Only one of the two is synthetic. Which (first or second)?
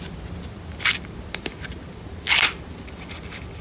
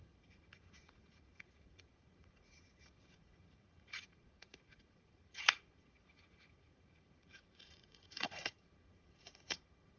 second